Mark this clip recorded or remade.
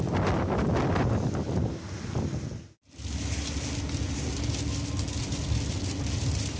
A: recorded